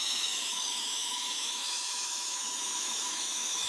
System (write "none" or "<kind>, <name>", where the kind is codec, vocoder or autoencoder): autoencoder, DAC-VAE